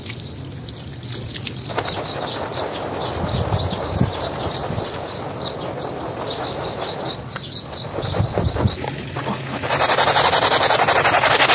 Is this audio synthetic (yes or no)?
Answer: no